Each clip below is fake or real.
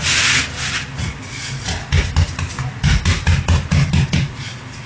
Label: real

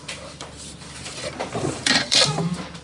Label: fake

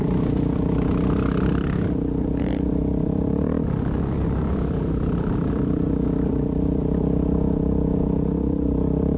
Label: fake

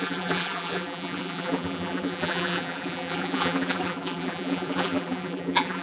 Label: fake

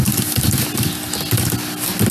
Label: real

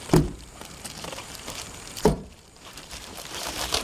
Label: fake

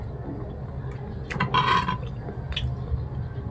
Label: real